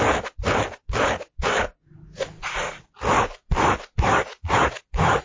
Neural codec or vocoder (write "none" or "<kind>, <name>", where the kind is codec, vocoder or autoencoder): none